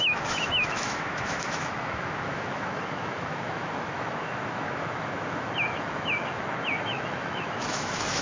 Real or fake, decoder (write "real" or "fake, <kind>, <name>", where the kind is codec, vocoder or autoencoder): fake, autoencoder, DAC-VAE